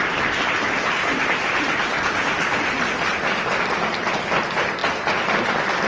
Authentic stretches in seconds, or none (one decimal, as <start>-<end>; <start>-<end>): 0.0-5.9